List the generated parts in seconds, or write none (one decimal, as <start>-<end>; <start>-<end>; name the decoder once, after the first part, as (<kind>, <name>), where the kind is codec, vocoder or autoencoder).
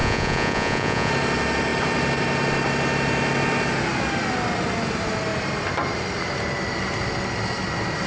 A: 0.0-1.1 (vocoder, Vocos)